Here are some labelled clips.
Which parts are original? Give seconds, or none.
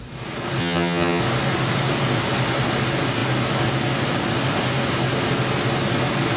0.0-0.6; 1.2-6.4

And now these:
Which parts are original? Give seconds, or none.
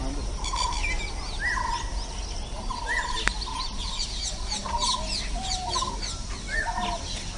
0.0-7.4